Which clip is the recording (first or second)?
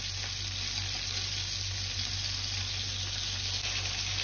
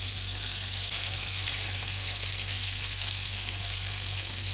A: first